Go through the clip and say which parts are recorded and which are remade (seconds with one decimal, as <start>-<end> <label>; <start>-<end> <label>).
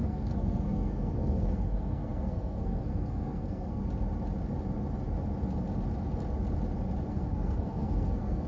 0.0-3.8 remade; 3.8-7.1 recorded; 7.1-8.5 remade